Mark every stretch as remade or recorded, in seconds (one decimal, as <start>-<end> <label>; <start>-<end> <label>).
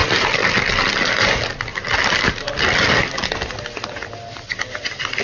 0.0-5.2 recorded